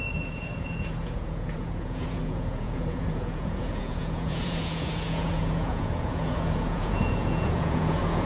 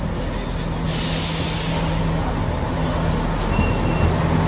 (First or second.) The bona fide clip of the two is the second